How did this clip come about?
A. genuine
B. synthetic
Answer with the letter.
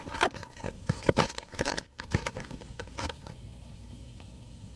B